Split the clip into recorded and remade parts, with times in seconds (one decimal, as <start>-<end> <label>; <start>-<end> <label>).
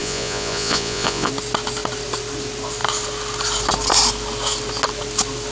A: 0.0-1.3 remade; 1.3-5.5 recorded